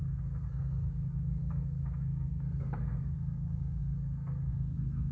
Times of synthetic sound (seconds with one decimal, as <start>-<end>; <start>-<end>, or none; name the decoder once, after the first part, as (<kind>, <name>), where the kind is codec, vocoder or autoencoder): 0.0-5.1 (codec, SNAC)